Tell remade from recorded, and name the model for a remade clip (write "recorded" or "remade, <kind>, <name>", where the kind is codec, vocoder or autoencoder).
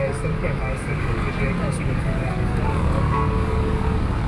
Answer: remade, codec, DAC